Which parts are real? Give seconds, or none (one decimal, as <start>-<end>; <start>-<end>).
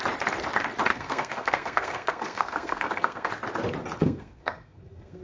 0.0-0.9; 3.3-4.0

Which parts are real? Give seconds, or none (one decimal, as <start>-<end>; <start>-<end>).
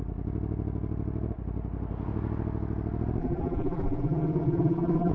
0.0-3.2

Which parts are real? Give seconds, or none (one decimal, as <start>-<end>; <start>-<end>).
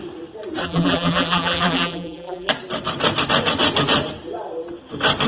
0.0-0.6; 2.5-5.3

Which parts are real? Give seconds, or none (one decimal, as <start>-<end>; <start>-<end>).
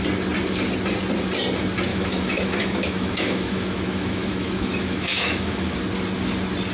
0.0-1.9; 5.8-6.7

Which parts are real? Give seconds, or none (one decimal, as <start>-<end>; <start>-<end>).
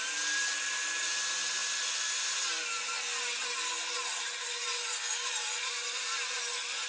0.0-6.9